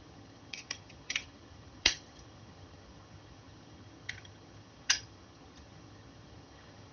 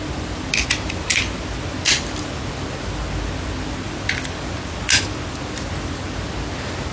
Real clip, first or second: second